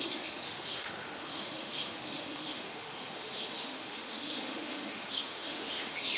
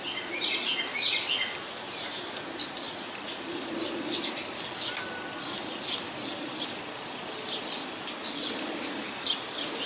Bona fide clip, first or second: second